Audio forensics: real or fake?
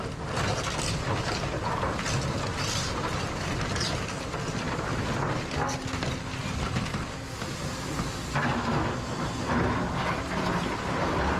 real